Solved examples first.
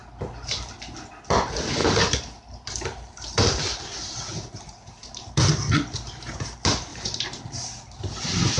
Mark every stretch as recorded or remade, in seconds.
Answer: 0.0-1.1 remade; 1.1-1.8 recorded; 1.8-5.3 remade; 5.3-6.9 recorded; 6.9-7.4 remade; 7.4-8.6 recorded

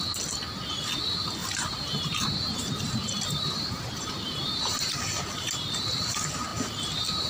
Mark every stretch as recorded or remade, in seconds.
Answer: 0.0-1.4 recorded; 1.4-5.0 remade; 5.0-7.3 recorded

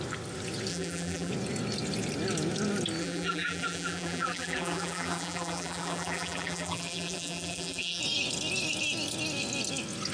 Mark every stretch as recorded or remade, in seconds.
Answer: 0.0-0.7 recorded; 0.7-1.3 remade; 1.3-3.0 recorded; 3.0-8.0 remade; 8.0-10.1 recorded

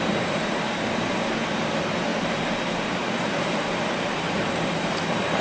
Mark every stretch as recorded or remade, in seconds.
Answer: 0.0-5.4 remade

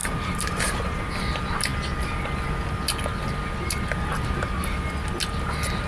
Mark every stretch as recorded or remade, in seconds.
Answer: 0.0-1.2 remade; 1.2-5.9 recorded

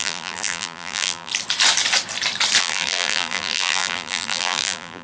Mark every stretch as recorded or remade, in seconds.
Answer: 0.0-1.3 remade; 1.3-2.6 recorded; 2.6-5.0 remade